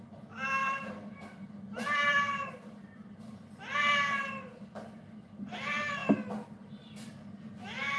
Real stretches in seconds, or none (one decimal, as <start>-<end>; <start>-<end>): 0.0-0.6; 3.5-8.0

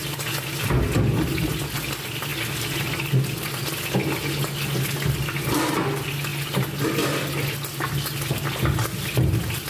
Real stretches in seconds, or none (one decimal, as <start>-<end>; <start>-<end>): 0.0-9.7

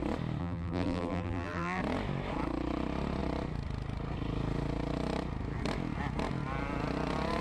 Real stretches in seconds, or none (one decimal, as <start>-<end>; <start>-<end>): 0.0-0.4; 1.8-7.4

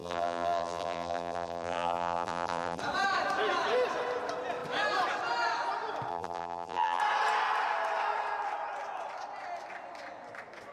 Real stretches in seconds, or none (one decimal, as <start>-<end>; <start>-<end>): 2.8-6.1; 7.0-10.7